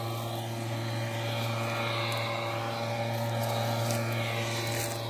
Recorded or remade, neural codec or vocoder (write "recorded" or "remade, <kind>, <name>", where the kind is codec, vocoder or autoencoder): recorded